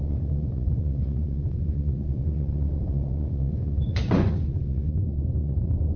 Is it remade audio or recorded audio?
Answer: remade